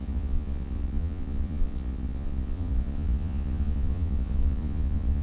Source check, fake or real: fake